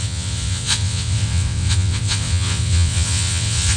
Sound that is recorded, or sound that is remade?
remade